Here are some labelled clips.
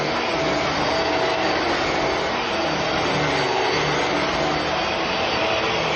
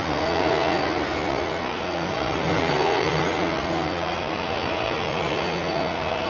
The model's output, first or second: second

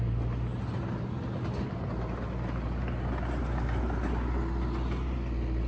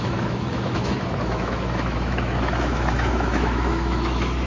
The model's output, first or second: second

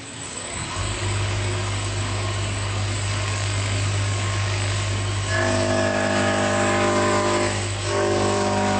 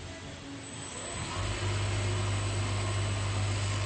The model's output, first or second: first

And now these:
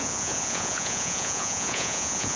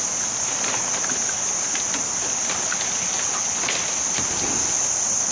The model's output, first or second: first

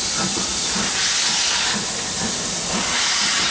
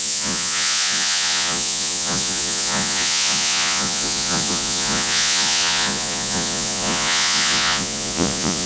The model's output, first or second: second